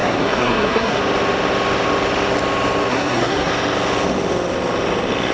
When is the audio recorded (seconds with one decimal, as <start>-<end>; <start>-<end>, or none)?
1.0-2.9; 3.5-5.3